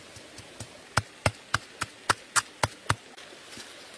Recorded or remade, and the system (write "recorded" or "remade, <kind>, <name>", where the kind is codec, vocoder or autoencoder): recorded